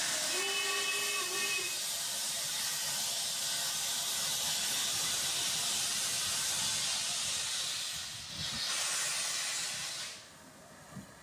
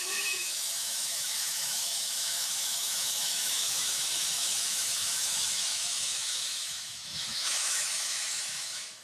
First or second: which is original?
first